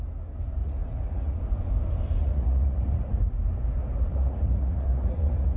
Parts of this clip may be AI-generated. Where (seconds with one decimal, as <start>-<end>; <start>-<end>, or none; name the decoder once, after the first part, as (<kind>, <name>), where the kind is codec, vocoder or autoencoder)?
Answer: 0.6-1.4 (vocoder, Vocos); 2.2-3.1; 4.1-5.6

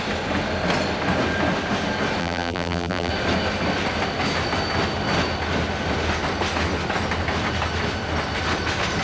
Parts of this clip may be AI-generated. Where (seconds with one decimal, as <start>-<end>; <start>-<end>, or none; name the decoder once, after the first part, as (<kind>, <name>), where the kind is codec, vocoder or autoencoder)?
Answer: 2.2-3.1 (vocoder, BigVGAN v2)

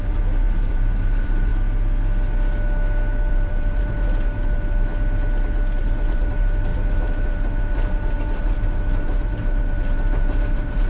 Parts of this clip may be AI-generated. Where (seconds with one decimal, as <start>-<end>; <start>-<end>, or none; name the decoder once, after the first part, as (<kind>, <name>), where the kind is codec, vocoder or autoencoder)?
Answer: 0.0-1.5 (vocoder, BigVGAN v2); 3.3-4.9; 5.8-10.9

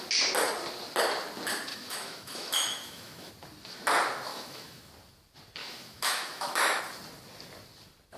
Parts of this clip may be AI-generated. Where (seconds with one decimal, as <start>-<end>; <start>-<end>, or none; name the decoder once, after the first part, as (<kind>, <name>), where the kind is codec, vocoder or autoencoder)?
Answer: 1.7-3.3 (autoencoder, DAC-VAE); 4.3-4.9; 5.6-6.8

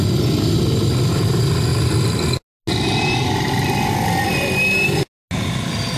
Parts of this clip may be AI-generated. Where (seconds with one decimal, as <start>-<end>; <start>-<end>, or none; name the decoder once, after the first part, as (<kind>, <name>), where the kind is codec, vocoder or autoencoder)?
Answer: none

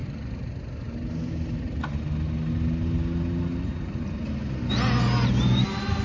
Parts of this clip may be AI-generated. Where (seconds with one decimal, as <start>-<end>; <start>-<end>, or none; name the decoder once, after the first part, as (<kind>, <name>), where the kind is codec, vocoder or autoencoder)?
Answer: none

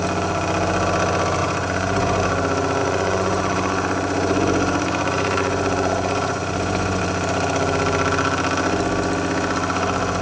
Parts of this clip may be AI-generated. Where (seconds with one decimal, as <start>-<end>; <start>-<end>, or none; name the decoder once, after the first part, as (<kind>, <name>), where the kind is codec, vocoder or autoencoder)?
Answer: 1.4-2.2 (vocoder, Vocos); 2.8-7.0

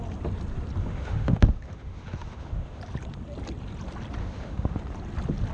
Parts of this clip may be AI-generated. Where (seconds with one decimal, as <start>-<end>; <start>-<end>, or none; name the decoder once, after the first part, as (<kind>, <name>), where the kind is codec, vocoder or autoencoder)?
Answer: 0.8-2.8 (autoencoder, DAC-VAE); 4.2-4.8